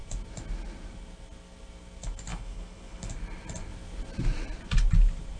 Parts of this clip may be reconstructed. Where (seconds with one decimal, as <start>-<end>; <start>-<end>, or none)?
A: 2.3-3.1